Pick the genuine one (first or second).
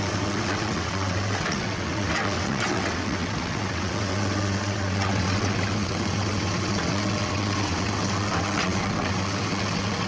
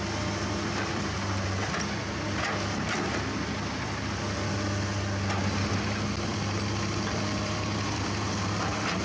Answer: second